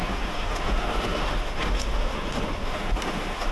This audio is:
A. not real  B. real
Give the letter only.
A